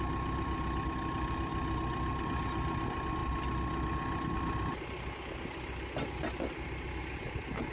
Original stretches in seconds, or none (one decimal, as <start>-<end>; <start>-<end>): 0.0-7.7